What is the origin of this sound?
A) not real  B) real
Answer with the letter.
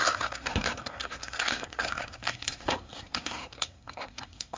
A